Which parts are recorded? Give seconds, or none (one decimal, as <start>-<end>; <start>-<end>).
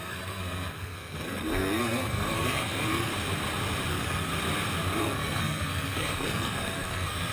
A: 3.1-3.9; 4.3-5.0